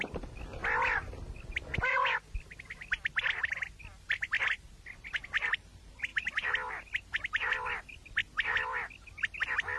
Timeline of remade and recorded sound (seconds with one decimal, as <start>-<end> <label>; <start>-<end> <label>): 0.0-8.2 remade; 8.2-9.4 recorded; 9.4-9.8 remade